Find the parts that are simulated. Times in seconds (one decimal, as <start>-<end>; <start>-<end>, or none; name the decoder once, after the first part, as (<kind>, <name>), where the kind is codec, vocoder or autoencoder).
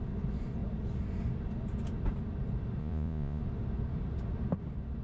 2.8-3.4 (vocoder, Vocos)